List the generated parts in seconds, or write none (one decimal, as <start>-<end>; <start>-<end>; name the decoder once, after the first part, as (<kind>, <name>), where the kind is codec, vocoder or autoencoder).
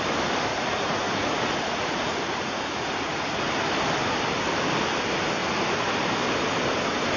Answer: 0.5-3.5 (vocoder, Vocos)